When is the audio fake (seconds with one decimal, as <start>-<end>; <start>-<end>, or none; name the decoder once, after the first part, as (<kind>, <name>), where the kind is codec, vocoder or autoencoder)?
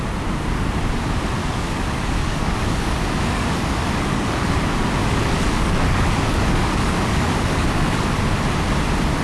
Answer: 1.4-4.5 (codec, DAC); 5.0-8.0